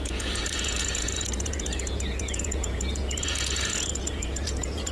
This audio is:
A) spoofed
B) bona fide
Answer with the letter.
A